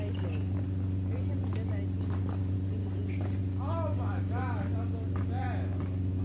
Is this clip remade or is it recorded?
recorded